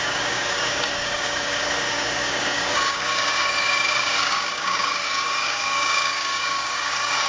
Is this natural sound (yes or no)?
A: no